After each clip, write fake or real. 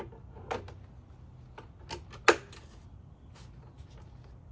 real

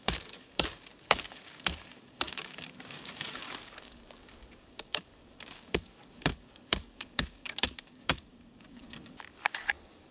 fake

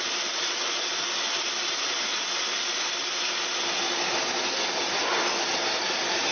real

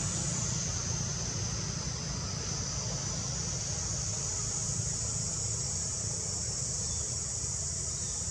real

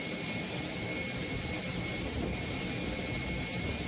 real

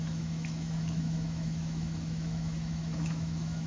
fake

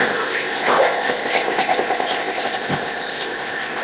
fake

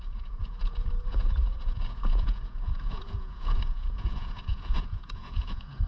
fake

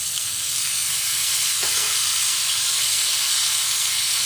fake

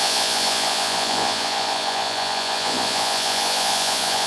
fake